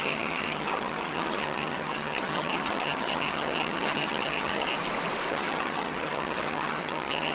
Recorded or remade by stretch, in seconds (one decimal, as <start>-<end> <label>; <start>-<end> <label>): 0.0-4.7 remade; 4.7-5.3 recorded; 5.3-7.3 remade